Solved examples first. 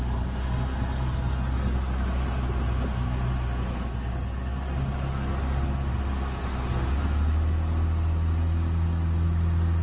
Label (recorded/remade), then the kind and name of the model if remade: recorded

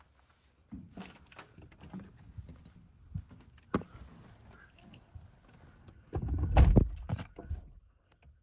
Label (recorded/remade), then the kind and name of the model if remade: recorded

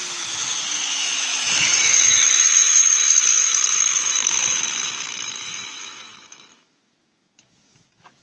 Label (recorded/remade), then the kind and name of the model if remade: remade, autoencoder, DAC-VAE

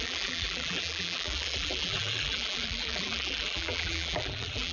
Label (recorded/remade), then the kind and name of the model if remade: remade, vocoder, BigVGAN v2